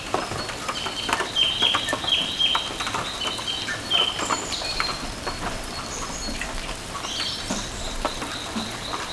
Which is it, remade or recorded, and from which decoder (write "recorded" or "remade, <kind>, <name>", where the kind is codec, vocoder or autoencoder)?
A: remade, vocoder, BigVGAN v2